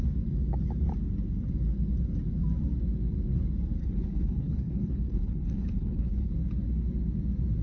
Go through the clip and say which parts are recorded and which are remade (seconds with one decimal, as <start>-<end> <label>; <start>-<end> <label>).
0.0-3.8 recorded; 3.8-6.3 remade; 6.3-7.6 recorded